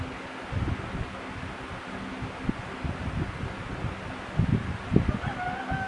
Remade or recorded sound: recorded